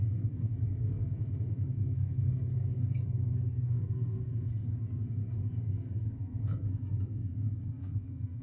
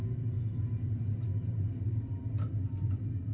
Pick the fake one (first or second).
first